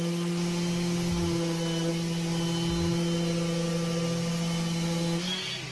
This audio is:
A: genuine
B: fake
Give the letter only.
A